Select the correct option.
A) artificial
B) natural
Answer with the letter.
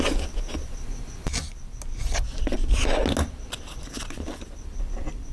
B